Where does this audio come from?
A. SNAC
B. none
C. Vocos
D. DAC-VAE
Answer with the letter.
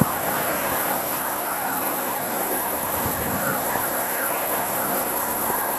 A